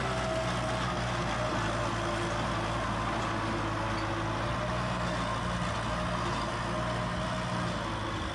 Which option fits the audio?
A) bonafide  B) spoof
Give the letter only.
A